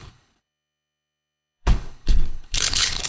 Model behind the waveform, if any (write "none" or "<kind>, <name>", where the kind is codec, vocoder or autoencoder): codec, HILCodec